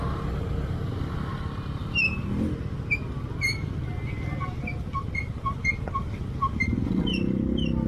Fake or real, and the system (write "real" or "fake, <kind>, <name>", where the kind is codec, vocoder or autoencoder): real